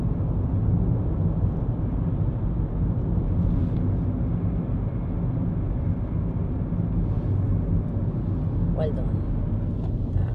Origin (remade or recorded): recorded